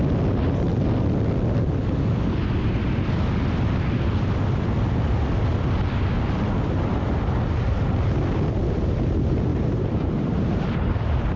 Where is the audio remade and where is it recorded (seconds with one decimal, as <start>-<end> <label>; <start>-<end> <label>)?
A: 0.0-9.5 recorded; 9.5-11.4 remade